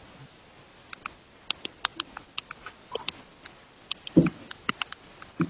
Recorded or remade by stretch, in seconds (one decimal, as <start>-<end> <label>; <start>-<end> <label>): 0.0-5.5 recorded